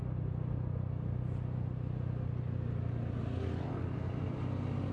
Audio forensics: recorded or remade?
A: recorded